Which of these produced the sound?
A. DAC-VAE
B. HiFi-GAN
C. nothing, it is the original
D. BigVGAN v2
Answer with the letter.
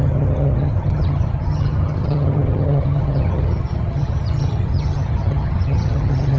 B